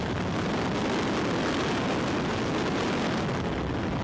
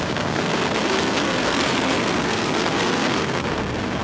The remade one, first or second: second